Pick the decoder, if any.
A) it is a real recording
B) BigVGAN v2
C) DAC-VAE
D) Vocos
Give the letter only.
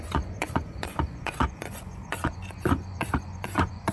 D